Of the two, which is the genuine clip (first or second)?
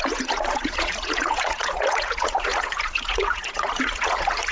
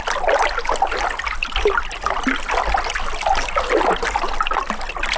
second